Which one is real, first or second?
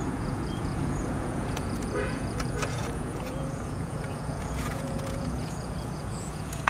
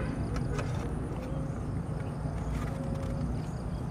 second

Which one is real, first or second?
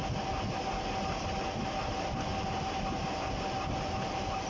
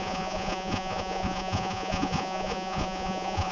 first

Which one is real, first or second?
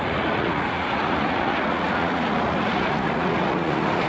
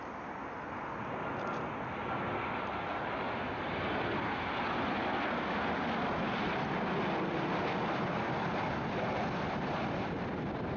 second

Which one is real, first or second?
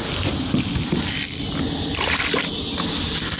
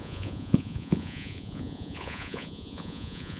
first